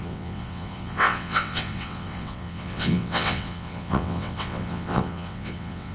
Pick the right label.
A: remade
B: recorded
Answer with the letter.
A